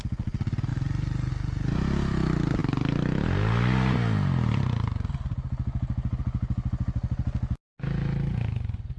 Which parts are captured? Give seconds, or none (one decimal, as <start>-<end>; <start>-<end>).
0.0-9.0